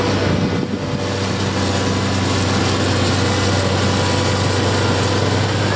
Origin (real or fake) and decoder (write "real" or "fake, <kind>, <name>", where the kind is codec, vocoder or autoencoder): real